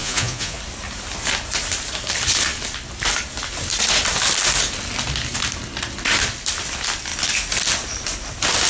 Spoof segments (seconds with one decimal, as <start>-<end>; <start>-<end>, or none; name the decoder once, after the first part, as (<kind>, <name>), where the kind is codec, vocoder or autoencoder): 0.0-0.6 (vocoder, Vocos)